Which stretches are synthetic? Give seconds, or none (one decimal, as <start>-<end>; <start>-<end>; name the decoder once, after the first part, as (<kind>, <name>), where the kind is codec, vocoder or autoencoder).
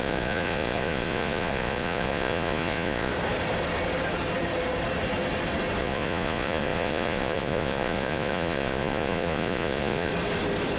0.0-3.1 (vocoder, Vocos); 5.8-10.1